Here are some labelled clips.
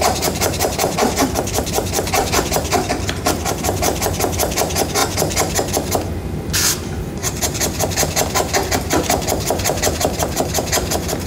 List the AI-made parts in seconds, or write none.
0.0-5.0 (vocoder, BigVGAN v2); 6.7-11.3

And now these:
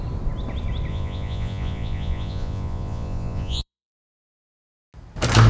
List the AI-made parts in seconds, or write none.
0.9-4.2 (vocoder, Vocos)

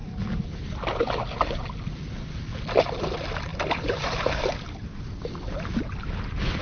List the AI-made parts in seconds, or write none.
0.0-0.7 (vocoder, BigVGAN v2); 3.5-4.4

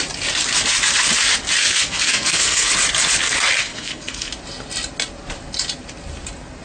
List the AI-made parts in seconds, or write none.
1.6-2.7 (codec, SNAC); 3.6-4.3